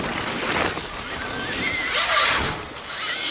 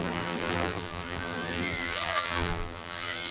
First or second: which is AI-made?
second